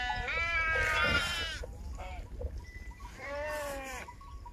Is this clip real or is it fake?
fake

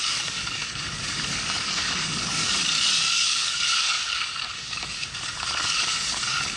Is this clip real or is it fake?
fake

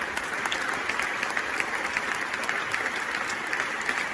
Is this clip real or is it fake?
real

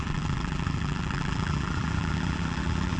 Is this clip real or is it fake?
fake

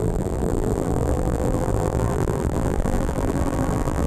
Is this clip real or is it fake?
fake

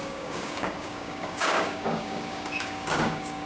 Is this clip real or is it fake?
fake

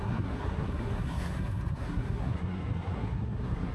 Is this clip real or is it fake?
fake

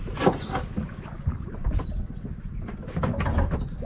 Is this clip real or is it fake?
real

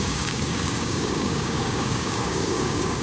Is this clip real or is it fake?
fake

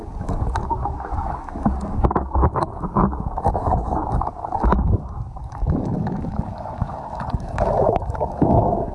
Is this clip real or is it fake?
fake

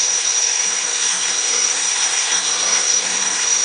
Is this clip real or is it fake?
fake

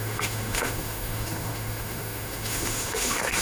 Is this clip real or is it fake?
fake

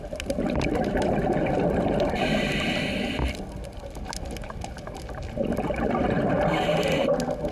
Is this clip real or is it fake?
real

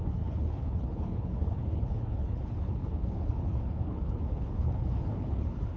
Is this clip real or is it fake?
fake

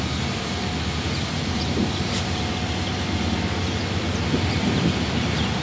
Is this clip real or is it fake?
real